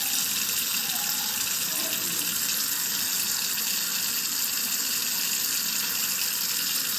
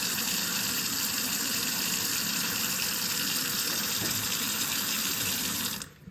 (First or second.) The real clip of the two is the first